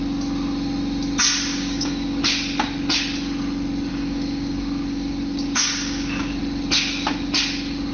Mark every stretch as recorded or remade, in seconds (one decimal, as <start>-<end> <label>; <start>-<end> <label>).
0.0-1.5 recorded; 1.5-2.2 remade; 2.2-3.9 recorded; 3.9-6.4 remade; 6.4-7.9 recorded